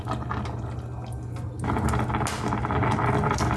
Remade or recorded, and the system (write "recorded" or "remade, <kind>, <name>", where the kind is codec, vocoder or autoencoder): recorded